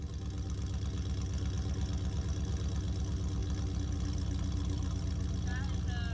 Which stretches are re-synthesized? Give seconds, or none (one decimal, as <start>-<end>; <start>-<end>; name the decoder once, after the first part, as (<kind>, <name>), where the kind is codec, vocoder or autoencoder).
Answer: none